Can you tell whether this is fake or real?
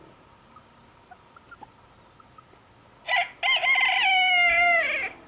real